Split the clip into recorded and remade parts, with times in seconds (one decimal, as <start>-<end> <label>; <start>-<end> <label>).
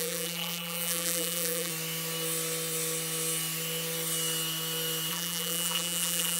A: 0.0-1.7 remade; 1.7-5.1 recorded; 5.1-6.4 remade